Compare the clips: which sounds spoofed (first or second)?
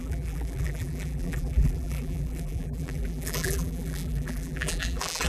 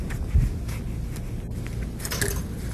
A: first